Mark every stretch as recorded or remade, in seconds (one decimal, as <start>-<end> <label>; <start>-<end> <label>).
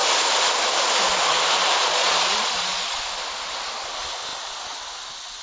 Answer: 0.0-1.8 recorded; 1.8-3.0 remade; 3.0-5.4 recorded